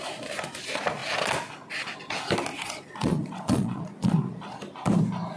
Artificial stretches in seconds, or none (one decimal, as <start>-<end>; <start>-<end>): 2.5-4.6